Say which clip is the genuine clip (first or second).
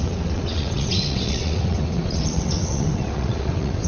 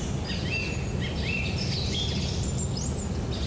second